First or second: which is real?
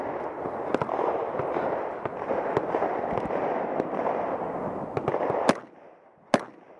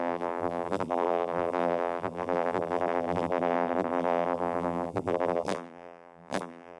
first